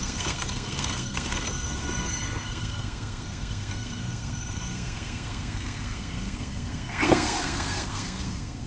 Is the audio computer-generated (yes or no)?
yes